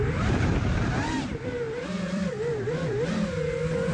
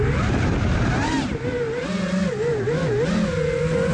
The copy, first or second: first